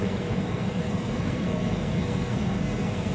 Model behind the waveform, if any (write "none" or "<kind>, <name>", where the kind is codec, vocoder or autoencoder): codec, SNAC